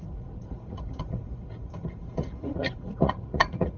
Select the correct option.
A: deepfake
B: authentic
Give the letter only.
A